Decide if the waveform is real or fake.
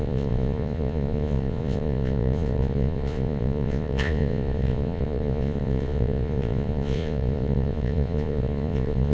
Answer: fake